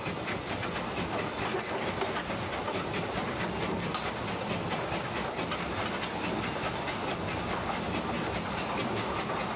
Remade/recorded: recorded